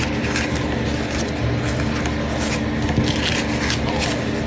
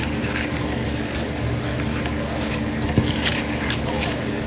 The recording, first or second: first